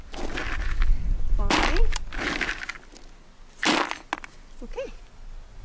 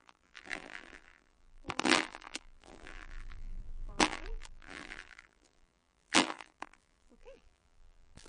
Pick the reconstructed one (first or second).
second